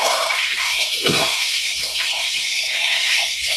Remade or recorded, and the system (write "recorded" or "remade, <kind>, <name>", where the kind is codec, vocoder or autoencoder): remade, codec, SNAC